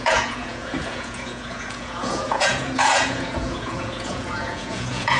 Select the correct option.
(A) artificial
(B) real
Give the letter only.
A